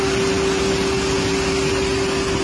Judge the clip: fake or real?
real